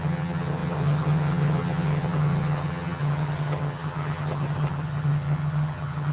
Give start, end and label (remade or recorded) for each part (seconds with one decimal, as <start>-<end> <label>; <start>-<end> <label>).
0.0-6.1 remade